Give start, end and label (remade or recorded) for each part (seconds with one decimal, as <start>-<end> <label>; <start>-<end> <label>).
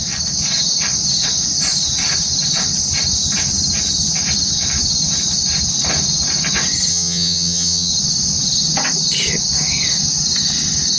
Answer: 0.0-6.9 recorded; 6.9-7.9 remade; 7.9-11.0 recorded